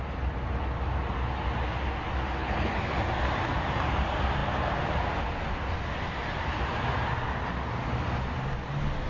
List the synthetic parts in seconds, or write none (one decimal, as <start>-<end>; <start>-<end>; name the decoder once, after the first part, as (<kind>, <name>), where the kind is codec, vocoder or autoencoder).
2.4-3.0 (codec, HILCodec)